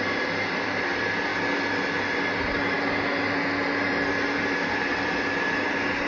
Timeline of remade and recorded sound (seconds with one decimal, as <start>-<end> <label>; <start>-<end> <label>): 0.0-1.3 remade; 1.3-5.0 recorded; 5.0-6.1 remade